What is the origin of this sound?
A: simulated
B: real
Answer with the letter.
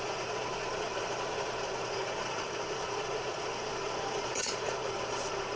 A